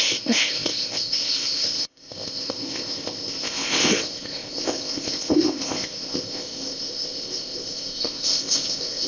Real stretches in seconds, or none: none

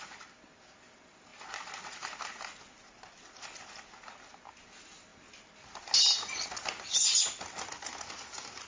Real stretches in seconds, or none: 0.0-8.7